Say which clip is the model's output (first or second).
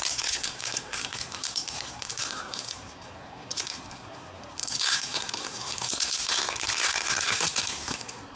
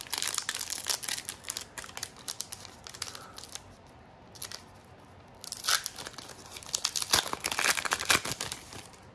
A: first